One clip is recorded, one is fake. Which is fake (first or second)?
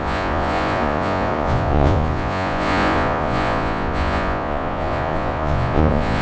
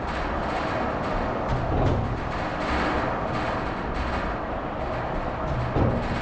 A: first